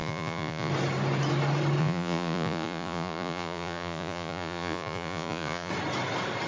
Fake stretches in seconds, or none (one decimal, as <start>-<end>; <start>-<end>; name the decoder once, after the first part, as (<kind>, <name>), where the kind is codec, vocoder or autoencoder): 0.0-0.7 (vocoder, Vocos); 1.8-5.7